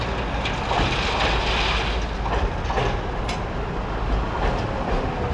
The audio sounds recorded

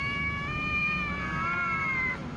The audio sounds recorded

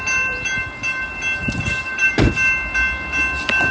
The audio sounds recorded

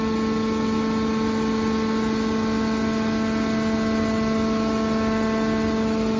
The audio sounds recorded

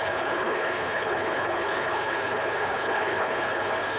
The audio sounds remade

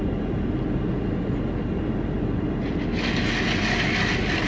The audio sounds recorded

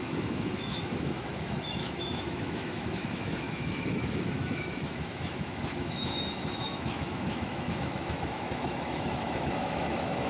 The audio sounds remade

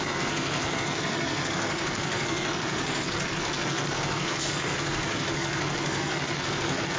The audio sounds remade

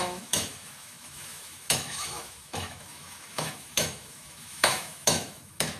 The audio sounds remade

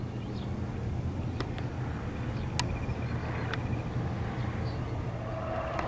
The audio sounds recorded